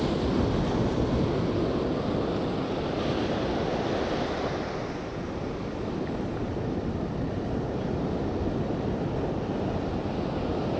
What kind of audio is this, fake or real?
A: real